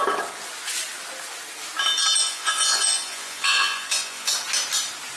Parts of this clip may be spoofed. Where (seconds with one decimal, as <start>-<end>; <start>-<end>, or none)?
2.2-4.3